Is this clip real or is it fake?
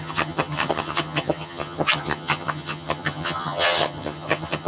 fake